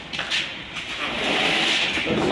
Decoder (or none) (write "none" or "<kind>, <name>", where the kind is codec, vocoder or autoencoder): none